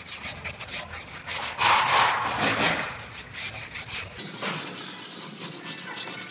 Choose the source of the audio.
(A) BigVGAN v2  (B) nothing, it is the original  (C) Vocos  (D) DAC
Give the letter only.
B